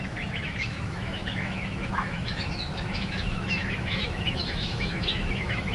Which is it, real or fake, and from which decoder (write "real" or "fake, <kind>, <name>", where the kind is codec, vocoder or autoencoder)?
fake, autoencoder, DAC-VAE